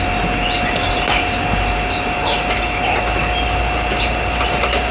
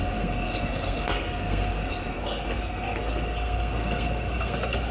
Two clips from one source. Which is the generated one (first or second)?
second